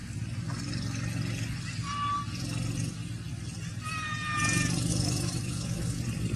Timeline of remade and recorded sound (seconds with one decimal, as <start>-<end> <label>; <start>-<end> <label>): 0.0-4.9 recorded; 4.9-6.0 remade; 6.0-6.4 recorded